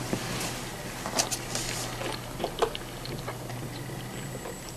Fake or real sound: real